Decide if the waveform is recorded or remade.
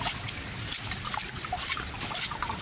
recorded